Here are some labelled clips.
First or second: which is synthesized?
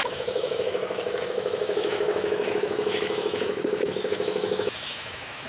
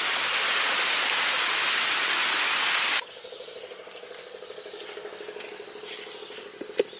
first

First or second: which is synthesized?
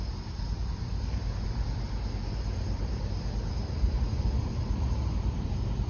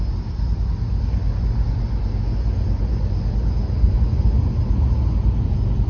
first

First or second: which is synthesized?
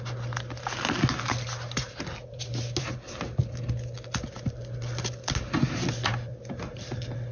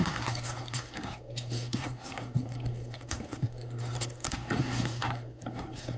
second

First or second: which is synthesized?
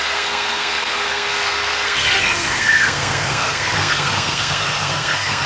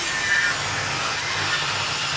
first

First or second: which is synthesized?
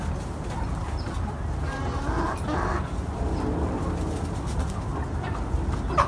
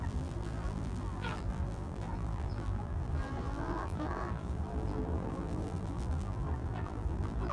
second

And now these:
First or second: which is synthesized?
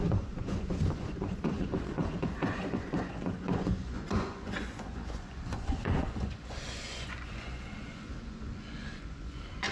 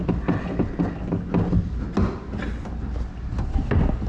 first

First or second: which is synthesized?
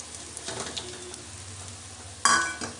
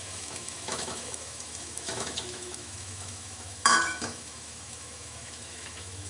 second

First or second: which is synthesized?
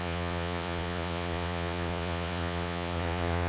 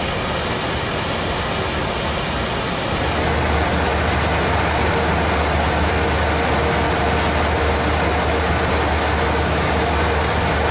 first